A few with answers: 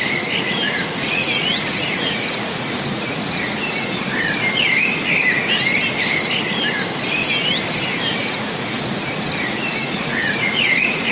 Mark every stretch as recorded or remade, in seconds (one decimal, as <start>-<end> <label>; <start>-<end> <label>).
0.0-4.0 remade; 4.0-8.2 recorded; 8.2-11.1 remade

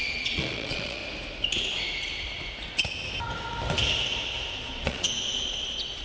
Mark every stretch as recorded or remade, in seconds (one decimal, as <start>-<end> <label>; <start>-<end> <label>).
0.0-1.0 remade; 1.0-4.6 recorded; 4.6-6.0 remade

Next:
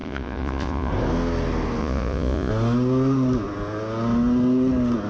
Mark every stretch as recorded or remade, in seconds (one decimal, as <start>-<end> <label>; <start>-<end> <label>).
0.0-0.9 remade; 0.9-1.8 recorded; 1.8-2.5 remade; 2.5-5.1 recorded

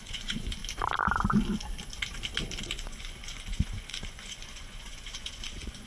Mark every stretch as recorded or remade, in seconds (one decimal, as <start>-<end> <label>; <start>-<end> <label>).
0.0-0.6 remade; 0.6-2.6 recorded; 2.6-5.9 remade

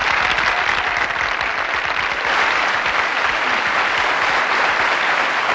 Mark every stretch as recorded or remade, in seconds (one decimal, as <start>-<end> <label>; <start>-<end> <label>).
0.0-5.5 recorded